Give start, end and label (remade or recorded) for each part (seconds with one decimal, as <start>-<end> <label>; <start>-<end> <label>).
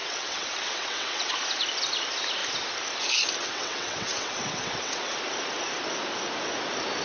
0.0-1.3 remade; 1.3-3.4 recorded; 3.4-5.1 remade; 5.1-7.0 recorded